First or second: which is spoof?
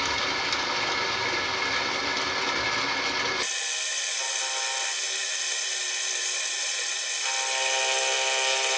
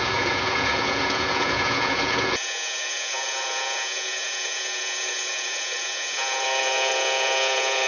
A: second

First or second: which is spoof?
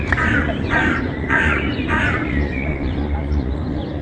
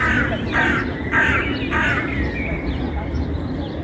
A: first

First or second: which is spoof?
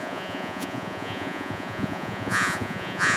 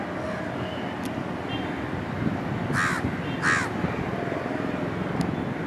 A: first